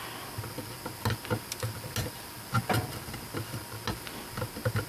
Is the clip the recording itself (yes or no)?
yes